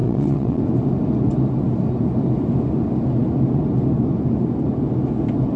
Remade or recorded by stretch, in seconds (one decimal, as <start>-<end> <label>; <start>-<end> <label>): 0.0-0.6 remade; 0.6-5.6 recorded